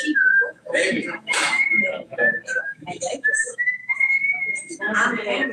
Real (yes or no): no